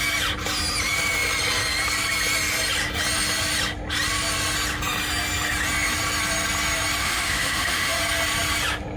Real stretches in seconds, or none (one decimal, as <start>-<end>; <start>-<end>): 0.0-7.0; 8.0-9.0

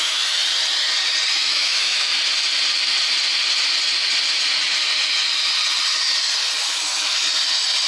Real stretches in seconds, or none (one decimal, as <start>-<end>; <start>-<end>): 0.4-1.3; 2.1-6.8; 7.2-7.9

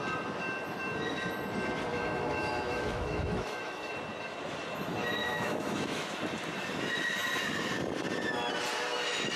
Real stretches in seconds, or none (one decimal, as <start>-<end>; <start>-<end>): 0.0-1.9; 3.9-5.2; 6.2-9.4